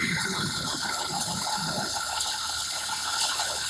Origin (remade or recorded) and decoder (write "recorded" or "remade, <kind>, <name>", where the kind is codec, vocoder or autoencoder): remade, codec, HILCodec